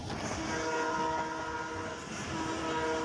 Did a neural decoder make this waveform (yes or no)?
no